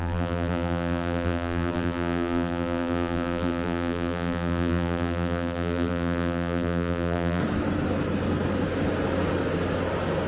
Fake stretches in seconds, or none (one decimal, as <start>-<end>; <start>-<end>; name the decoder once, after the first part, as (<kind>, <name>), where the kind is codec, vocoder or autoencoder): 0.0-7.4 (vocoder, BigVGAN v2)